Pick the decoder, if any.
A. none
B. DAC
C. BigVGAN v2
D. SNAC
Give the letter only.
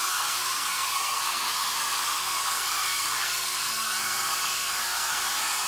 D